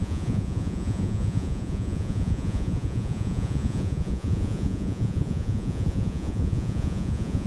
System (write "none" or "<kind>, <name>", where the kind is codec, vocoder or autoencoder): vocoder, Vocos